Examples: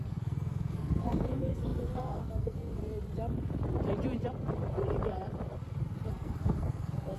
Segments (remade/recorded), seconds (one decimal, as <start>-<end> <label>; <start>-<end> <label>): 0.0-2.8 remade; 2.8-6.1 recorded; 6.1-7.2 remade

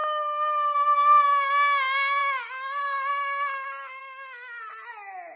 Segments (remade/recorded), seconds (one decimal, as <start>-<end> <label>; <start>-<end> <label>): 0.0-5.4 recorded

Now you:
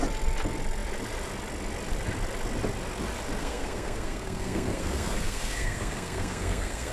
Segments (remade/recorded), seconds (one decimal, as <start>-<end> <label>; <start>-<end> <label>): 0.0-3.4 recorded; 3.4-6.9 remade

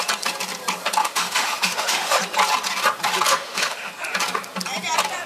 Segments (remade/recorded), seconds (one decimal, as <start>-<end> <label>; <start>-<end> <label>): 0.0-1.0 recorded; 1.0-2.2 remade; 2.2-3.3 recorded; 3.3-3.9 remade; 3.9-5.3 recorded

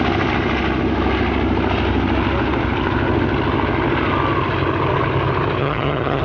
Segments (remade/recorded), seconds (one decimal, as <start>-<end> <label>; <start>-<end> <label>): 0.0-5.6 recorded; 5.6-6.2 remade

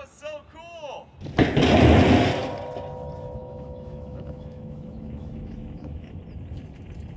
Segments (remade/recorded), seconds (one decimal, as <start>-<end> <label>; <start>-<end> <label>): 0.0-3.4 recorded; 3.4-6.2 remade; 6.2-7.2 recorded